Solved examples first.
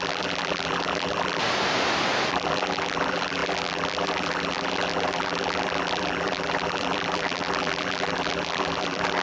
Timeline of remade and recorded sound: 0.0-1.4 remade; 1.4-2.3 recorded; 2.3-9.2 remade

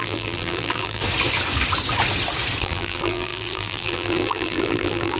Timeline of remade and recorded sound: 0.0-1.0 remade; 1.0-2.6 recorded; 2.6-5.2 remade

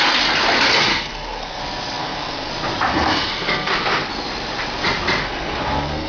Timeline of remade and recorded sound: 0.0-0.9 recorded; 0.9-1.6 remade; 1.6-2.0 recorded; 2.0-2.5 remade; 2.5-2.9 recorded; 2.9-4.1 remade; 4.1-5.2 recorded; 5.2-6.1 remade

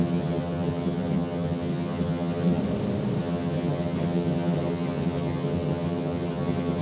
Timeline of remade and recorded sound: 0.0-2.6 remade; 2.6-3.2 recorded; 3.2-6.8 remade

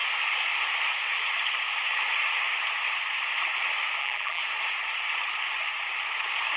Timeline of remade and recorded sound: 0.0-4.0 recorded; 4.0-4.4 remade; 4.4-6.6 recorded